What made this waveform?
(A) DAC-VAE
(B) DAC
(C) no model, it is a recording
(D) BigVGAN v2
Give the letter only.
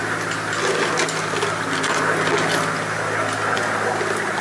C